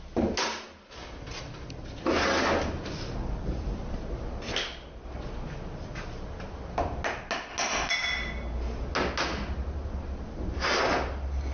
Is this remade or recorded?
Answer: recorded